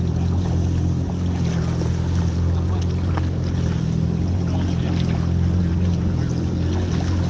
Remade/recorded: recorded